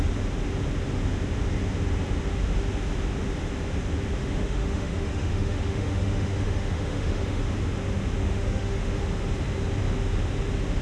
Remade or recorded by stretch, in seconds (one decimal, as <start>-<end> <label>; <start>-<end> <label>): 0.0-4.2 recorded; 4.2-7.4 remade; 7.4-8.2 recorded; 8.2-9.0 remade; 9.0-10.8 recorded